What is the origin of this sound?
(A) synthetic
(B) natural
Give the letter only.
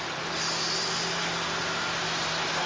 B